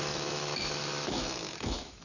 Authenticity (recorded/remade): remade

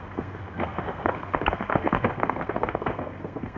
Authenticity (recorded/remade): remade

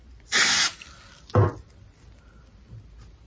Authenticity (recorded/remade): recorded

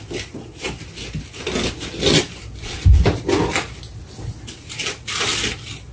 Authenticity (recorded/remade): recorded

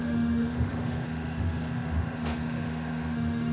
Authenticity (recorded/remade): remade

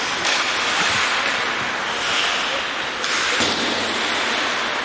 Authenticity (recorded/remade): recorded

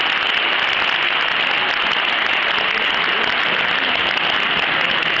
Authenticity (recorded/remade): recorded